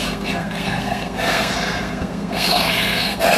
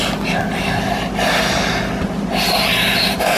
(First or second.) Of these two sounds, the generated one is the first